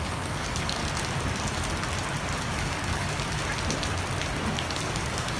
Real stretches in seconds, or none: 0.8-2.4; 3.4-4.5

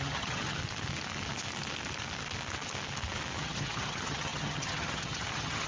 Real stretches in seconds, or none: 0.6-3.4